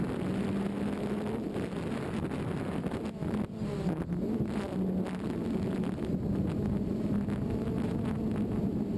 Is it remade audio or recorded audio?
recorded